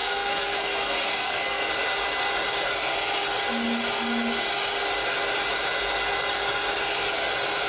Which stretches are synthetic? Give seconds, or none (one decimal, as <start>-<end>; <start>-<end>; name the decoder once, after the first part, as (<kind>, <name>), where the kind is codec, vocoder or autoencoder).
0.0-1.7 (codec, SNAC)

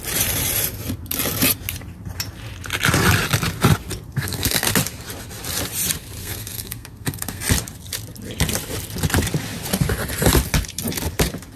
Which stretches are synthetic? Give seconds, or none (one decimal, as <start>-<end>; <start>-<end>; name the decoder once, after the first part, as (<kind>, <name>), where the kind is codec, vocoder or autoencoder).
4.1-4.7 (codec, SNAC); 6.2-7.4

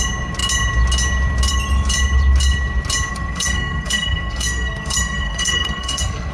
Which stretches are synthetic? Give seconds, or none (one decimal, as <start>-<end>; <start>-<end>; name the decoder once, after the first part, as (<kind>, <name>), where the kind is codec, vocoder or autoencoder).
3.1-6.3 (codec, SNAC)

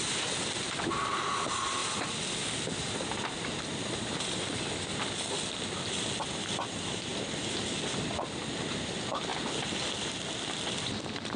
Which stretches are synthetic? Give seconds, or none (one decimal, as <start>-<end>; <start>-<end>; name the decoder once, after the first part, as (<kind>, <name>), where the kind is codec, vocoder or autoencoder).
none